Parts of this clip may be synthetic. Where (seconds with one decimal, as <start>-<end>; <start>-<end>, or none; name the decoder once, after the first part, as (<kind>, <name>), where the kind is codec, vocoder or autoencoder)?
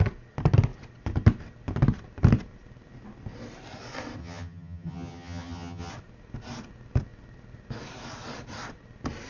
4.2-5.9 (vocoder, HiFi-GAN)